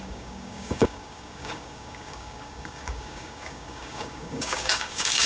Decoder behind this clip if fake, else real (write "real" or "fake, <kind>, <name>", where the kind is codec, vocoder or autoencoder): fake, codec, DAC